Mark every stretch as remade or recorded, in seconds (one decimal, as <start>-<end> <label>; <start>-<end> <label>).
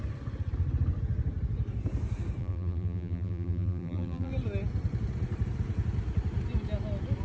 0.0-2.4 recorded; 2.4-4.3 remade; 4.3-7.2 recorded